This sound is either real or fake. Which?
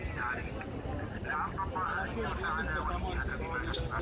real